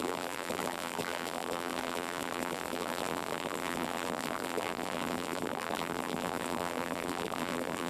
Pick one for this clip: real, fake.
fake